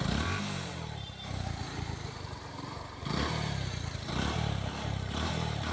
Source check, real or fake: fake